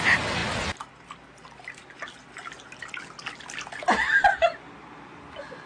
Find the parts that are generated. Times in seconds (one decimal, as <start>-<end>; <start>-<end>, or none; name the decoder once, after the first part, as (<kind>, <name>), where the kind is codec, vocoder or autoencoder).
none